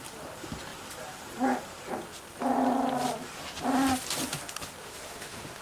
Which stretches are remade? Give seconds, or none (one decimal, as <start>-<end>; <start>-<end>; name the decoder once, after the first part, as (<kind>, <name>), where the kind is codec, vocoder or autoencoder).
4.8-5.6 (autoencoder, DAC-VAE)